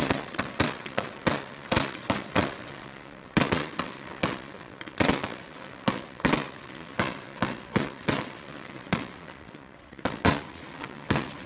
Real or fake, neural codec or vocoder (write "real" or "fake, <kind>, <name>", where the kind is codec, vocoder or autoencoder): fake, vocoder, WaveNeXt